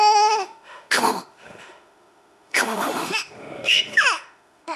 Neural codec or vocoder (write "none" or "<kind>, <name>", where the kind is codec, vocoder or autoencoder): autoencoder, DAC-VAE